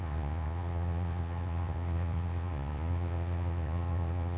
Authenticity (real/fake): fake